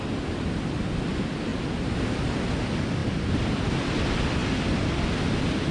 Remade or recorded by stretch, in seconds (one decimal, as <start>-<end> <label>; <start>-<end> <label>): 0.0-3.0 recorded; 3.0-3.6 remade; 3.6-5.7 recorded